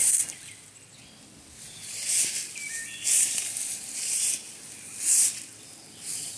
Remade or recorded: recorded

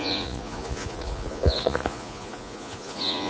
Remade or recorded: remade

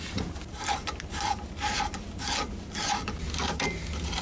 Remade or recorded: recorded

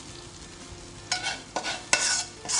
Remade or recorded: recorded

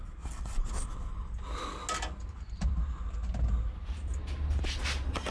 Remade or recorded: recorded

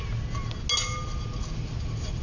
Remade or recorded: recorded